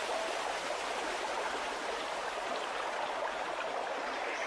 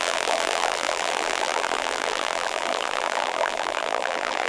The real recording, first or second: first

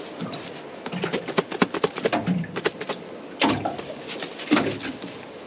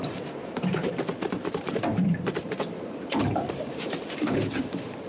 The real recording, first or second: first